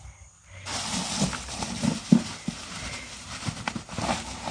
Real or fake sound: real